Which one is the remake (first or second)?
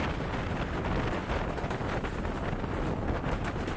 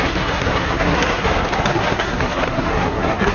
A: second